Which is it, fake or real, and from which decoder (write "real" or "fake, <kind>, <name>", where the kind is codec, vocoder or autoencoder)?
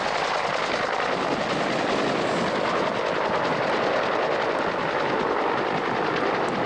real